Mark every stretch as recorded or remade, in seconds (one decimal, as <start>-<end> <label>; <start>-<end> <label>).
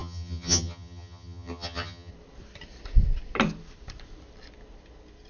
0.0-2.1 remade; 2.1-5.3 recorded